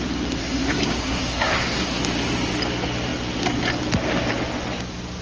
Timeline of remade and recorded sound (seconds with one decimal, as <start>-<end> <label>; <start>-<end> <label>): 0.0-0.4 recorded; 0.4-2.0 remade; 2.0-5.2 recorded